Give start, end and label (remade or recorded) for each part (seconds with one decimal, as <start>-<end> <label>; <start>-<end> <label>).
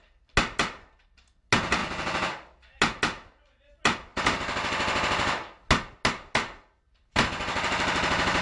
0.0-8.4 recorded